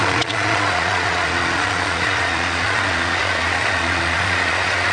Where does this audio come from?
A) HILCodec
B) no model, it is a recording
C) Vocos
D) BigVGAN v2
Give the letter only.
C